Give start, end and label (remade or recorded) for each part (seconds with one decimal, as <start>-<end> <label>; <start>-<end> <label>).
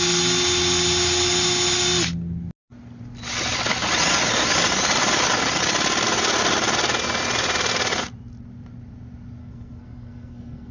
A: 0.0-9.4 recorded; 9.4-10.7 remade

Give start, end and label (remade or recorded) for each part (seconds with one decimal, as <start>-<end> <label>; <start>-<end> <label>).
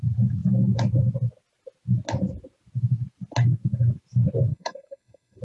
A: 0.0-4.5 recorded; 4.5-5.4 remade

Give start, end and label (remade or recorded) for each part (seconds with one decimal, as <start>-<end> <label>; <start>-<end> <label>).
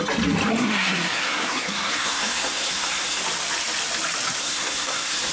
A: 0.0-0.5 recorded; 0.5-3.2 remade; 3.2-4.4 recorded; 4.4-5.3 remade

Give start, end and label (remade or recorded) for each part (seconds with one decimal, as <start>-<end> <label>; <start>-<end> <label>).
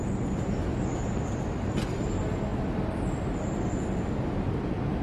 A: 0.0-5.0 recorded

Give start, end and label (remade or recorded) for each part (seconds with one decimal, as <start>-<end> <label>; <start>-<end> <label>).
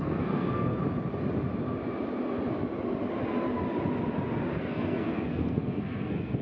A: 0.0-0.8 remade; 0.8-4.6 recorded; 4.6-6.4 remade